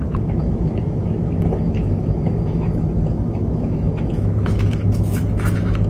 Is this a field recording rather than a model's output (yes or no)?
no